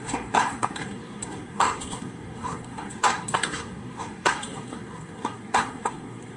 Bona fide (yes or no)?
no